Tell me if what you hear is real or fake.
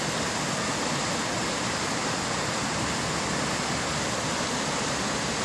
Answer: real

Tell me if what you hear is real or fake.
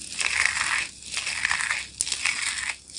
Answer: real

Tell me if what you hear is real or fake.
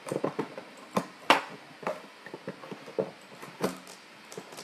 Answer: real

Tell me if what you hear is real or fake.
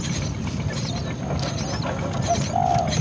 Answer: real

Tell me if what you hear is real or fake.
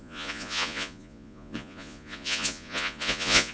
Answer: fake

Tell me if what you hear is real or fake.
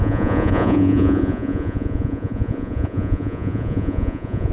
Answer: fake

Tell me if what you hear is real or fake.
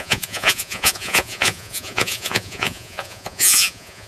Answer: fake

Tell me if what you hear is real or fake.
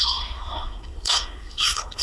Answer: fake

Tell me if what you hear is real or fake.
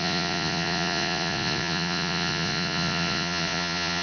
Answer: fake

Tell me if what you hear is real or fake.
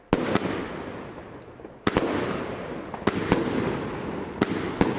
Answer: real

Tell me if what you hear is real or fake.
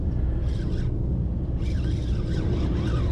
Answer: real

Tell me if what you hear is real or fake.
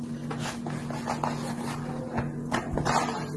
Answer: real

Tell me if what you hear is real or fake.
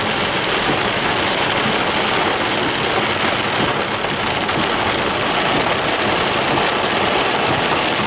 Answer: real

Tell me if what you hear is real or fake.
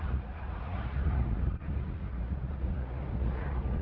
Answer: fake